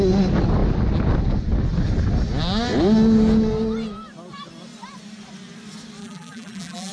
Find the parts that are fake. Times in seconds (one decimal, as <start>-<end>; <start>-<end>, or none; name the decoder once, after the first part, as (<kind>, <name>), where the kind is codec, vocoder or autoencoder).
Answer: 6.0-6.9 (vocoder, BigVGAN v2)